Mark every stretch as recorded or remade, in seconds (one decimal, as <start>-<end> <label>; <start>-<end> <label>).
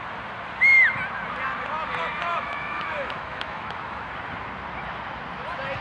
0.0-2.3 recorded; 2.3-4.1 remade; 4.1-5.8 recorded